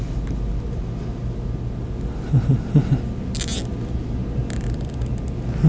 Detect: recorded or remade recorded